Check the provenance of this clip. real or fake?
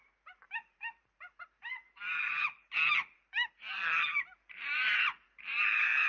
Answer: fake